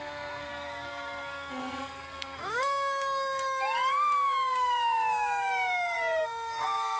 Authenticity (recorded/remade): remade